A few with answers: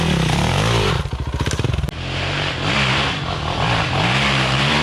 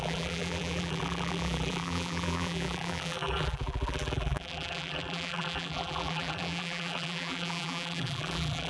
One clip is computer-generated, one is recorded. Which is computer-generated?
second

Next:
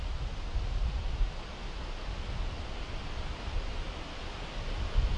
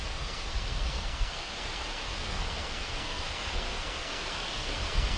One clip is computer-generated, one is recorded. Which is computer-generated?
second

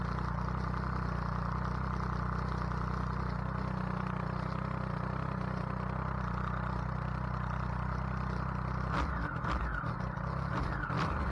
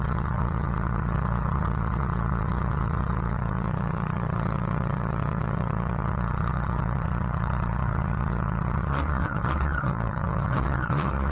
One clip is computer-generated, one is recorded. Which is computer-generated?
second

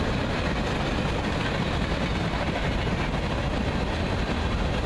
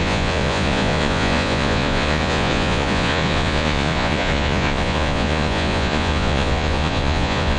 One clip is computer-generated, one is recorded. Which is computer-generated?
second